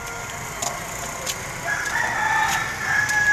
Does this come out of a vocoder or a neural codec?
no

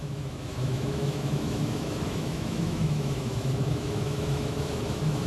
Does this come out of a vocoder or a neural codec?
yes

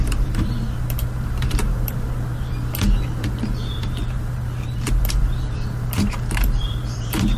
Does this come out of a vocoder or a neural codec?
yes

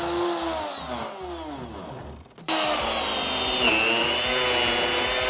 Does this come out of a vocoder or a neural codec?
no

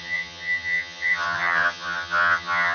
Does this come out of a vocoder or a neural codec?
yes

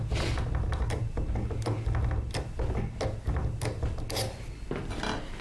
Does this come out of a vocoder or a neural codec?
no